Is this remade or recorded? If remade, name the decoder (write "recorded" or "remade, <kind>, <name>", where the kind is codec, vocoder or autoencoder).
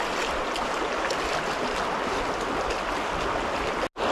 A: recorded